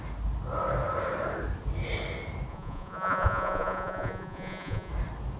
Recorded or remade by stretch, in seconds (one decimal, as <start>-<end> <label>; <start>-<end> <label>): 0.0-2.5 recorded; 2.5-4.9 remade; 4.9-5.4 recorded